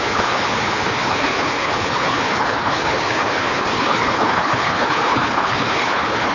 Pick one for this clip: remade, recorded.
remade